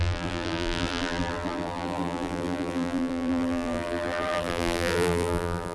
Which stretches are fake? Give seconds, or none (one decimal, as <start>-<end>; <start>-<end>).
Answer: 0.0-5.7